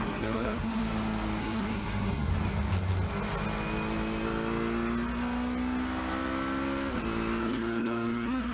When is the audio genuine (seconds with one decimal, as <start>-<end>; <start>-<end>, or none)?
0.8-1.4; 2.3-7.4